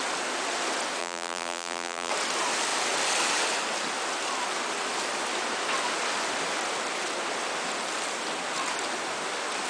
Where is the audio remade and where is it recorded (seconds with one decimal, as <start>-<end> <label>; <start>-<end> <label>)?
0.0-1.0 recorded; 1.0-2.1 remade; 2.1-9.7 recorded